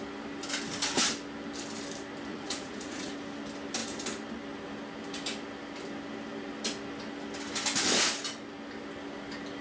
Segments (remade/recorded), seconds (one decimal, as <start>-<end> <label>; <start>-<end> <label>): 0.0-2.3 recorded; 2.3-3.1 remade; 3.1-9.6 recorded